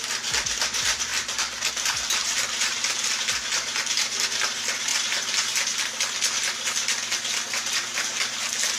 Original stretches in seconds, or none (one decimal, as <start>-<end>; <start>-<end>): 4.9-7.5